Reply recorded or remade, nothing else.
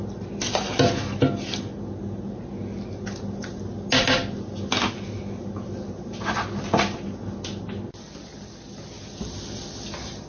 recorded